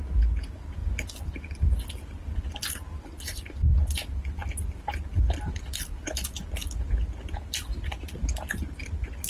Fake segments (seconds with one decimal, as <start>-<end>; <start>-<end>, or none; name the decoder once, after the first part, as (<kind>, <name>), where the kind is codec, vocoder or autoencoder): none